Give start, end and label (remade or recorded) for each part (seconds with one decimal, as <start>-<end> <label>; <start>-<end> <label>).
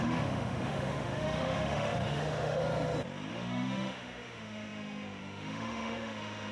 0.0-2.6 remade; 2.6-3.3 recorded; 3.3-6.5 remade